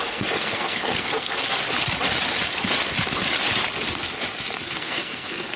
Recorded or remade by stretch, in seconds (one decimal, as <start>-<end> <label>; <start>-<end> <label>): 0.0-1.6 remade; 1.6-4.8 recorded; 4.8-5.6 remade